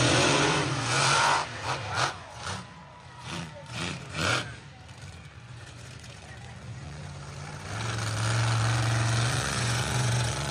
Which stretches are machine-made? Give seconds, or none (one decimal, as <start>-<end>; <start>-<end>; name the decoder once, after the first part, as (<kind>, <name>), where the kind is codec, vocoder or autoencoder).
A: 0.0-1.4 (vocoder, Vocos); 2.1-4.3; 5.1-7.0; 9.3-10.5